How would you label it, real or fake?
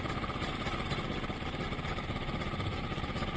real